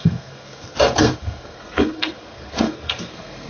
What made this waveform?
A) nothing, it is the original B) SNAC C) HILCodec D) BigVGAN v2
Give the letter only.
B